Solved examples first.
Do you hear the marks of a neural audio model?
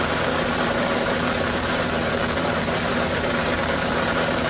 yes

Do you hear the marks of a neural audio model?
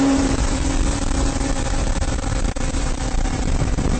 yes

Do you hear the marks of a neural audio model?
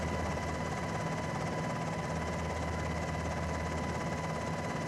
no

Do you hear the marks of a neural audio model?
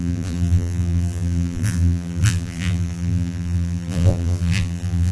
yes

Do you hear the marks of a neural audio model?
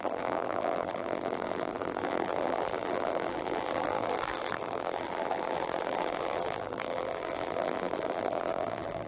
yes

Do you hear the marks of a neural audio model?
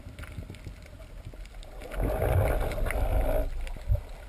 no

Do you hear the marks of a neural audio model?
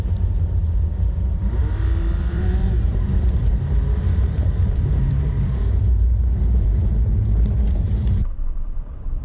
yes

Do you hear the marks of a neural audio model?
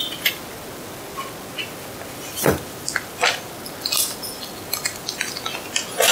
no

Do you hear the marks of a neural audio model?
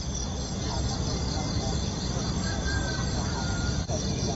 yes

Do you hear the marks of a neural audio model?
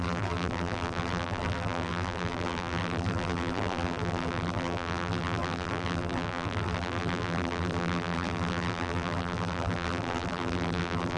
yes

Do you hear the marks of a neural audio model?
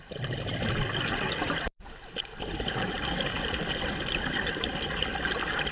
yes